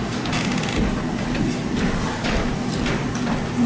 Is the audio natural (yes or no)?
yes